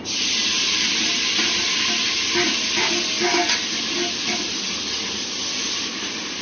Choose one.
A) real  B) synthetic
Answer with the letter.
A